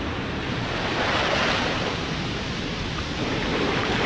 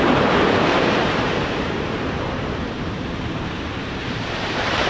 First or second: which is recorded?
first